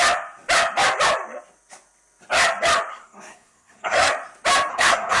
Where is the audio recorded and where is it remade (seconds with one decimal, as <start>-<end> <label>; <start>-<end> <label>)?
0.0-2.9 recorded; 2.9-4.1 remade; 4.1-4.7 recorded; 4.7-5.2 remade